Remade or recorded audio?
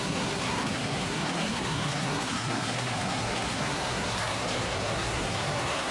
remade